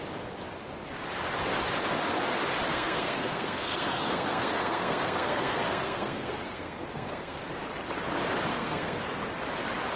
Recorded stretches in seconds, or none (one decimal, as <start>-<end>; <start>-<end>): 0.0-2.7; 7.4-8.5; 9.0-10.0